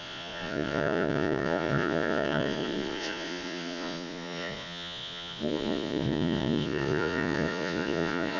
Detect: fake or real fake